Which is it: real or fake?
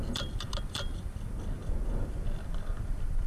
real